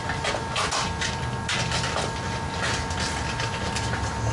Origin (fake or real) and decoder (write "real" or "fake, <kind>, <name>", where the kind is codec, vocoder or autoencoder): real